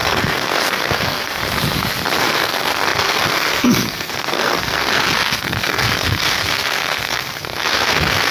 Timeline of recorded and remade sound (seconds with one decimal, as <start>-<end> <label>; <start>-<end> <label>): 0.0-1.4 remade; 1.4-2.2 recorded; 2.2-8.3 remade